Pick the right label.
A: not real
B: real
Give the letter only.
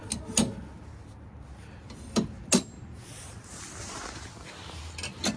B